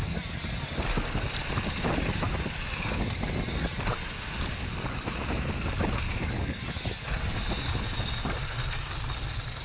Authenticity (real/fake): real